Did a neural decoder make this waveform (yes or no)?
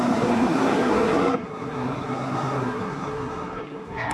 yes